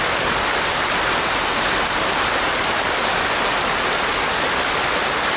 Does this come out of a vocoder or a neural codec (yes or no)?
no